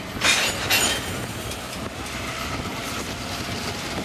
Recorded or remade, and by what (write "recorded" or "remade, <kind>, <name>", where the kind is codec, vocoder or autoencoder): recorded